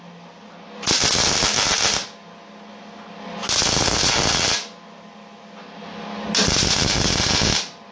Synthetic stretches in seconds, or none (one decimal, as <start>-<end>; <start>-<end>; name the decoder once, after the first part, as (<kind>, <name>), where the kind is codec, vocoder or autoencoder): none